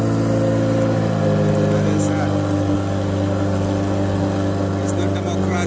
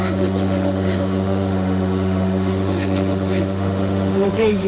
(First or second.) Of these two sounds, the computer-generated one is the second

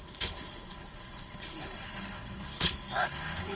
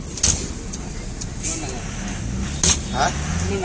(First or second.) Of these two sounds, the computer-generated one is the first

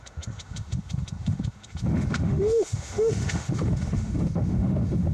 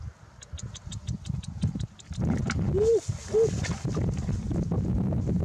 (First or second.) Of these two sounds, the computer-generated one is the first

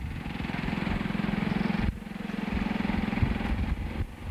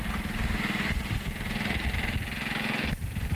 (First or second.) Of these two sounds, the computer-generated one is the first